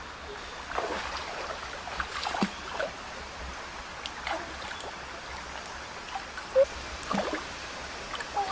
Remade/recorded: recorded